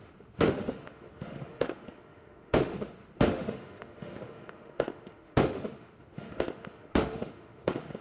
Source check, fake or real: fake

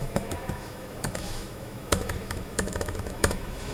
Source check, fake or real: fake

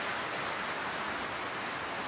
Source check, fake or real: real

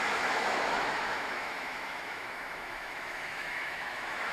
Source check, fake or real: fake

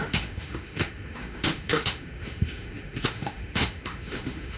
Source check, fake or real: fake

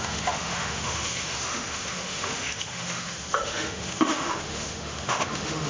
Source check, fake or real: fake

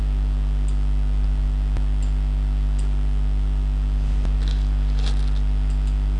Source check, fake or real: real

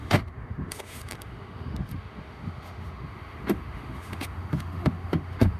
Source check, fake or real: fake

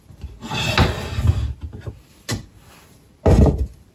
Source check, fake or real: real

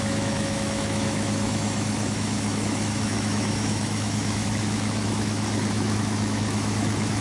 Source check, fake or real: fake